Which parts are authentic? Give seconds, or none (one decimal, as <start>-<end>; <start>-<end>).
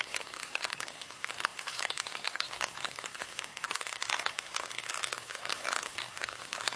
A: none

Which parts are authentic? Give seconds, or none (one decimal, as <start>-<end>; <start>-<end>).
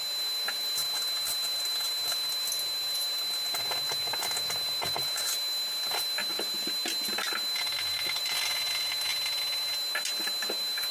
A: 0.0-10.9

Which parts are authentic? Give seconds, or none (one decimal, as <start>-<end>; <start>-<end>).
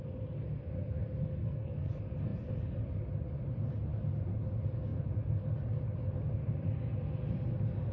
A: 0.0-1.4; 1.9-7.9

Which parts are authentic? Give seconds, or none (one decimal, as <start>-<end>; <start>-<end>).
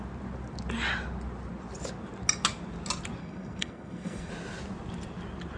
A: 0.0-3.2; 4.3-5.6